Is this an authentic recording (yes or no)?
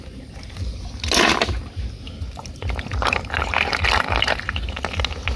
yes